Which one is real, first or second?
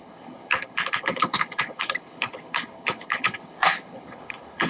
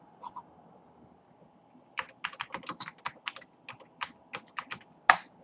second